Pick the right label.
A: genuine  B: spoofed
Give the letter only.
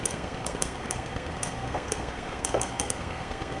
B